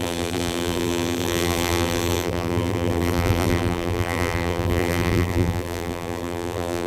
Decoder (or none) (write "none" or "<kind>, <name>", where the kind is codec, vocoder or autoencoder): vocoder, BigVGAN v2